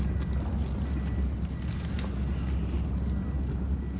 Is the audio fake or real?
real